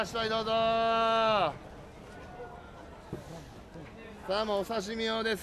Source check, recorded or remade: recorded